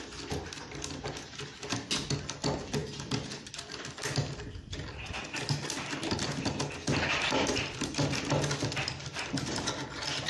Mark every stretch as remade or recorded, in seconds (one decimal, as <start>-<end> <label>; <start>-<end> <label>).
0.0-2.8 recorded; 2.8-3.5 remade; 3.5-10.3 recorded

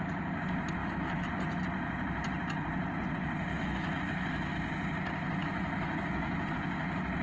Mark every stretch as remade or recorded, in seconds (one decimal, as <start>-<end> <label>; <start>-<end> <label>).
0.0-0.8 recorded; 0.8-1.3 remade; 1.3-3.5 recorded; 3.5-4.5 remade; 4.5-5.4 recorded; 5.4-6.4 remade; 6.4-7.2 recorded

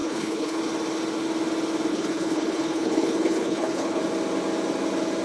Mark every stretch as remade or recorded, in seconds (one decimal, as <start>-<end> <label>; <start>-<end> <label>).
0.0-0.6 remade; 0.6-1.9 recorded; 1.9-4.0 remade; 4.0-5.2 recorded

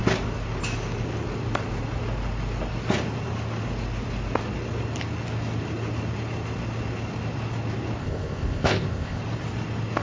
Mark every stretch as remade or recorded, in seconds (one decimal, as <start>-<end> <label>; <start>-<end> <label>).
0.0-8.0 recorded; 8.0-9.2 remade; 9.2-10.0 recorded

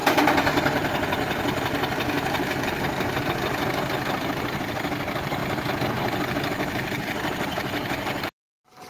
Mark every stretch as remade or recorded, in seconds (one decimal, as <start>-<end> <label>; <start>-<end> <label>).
0.0-8.9 recorded